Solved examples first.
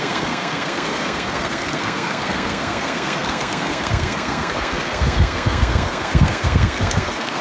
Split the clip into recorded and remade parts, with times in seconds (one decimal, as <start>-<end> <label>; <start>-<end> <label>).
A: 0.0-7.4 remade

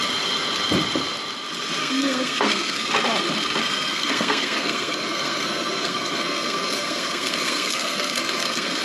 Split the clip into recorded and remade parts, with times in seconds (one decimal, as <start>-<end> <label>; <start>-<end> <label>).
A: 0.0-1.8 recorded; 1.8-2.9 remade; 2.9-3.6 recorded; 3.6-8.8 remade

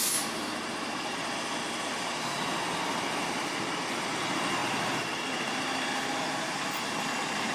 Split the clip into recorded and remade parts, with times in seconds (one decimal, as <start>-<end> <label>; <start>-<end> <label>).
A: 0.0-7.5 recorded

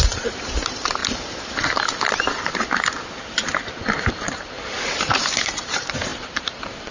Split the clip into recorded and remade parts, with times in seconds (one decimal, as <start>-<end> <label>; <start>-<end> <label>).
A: 0.0-1.0 remade; 1.0-4.1 recorded; 4.1-6.9 remade